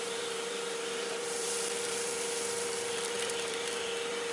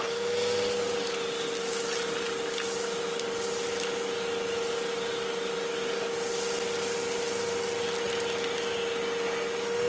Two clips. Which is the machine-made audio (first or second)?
first